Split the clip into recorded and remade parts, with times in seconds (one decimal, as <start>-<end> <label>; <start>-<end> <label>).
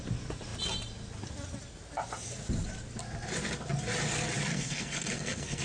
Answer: 0.0-4.5 recorded; 4.5-5.6 remade